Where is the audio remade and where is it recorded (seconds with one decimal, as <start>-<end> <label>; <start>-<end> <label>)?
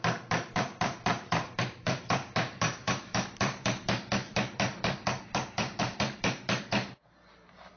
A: 0.0-7.8 remade